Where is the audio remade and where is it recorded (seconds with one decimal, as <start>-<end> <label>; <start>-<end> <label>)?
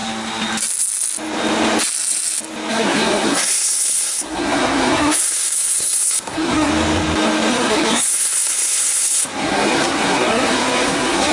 0.0-2.7 recorded; 2.7-6.7 remade; 6.7-7.5 recorded; 7.5-11.3 remade